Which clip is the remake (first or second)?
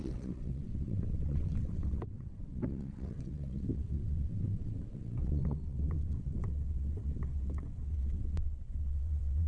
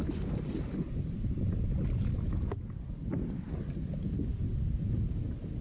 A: first